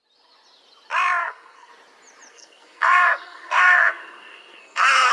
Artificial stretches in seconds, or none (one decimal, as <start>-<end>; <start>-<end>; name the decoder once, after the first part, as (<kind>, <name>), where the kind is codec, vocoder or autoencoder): 1.2-1.7 (codec, SNAC); 2.3-5.1